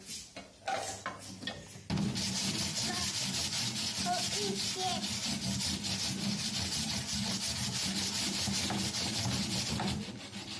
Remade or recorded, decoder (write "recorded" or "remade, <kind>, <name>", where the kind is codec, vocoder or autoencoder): recorded